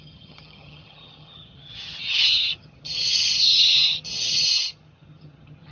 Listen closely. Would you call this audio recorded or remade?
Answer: remade